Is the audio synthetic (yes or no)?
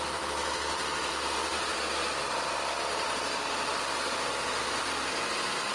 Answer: yes